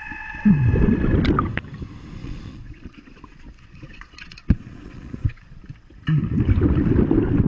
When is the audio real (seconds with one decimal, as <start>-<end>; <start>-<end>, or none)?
0.0-2.2; 5.6-7.5